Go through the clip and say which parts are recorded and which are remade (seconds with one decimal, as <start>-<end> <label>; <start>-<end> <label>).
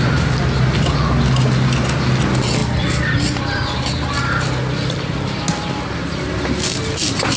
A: 0.0-7.4 recorded